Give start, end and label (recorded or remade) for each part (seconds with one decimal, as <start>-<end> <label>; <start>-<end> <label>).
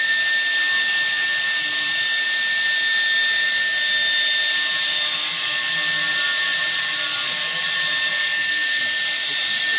0.0-8.1 recorded; 8.1-8.8 remade; 8.8-9.8 recorded